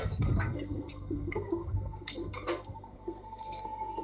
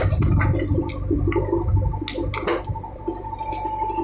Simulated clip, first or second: first